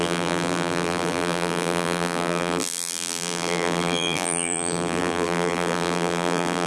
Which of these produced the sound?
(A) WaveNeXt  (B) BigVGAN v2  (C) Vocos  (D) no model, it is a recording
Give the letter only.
B